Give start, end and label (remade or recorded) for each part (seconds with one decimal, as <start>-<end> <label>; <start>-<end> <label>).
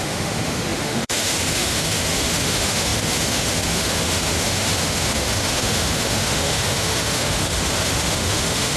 0.0-8.8 remade